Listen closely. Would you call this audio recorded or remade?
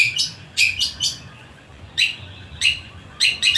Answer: remade